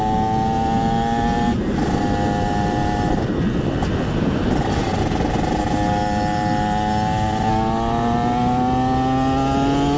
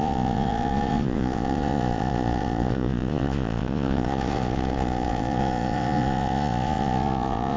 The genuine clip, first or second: first